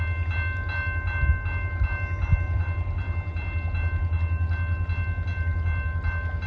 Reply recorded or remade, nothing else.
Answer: recorded